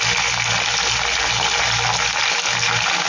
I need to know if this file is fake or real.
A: real